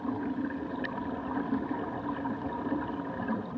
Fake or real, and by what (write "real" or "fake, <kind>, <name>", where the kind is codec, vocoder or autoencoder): real